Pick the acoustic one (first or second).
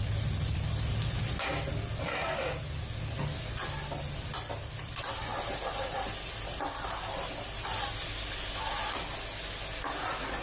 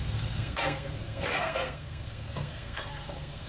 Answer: first